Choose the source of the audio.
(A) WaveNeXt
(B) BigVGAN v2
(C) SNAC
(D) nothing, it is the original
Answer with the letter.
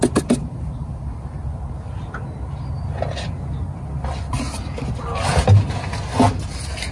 D